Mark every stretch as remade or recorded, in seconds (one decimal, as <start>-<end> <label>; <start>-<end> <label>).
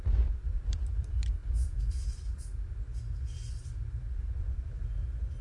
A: 0.0-2.9 remade; 2.9-3.5 recorded; 3.5-5.4 remade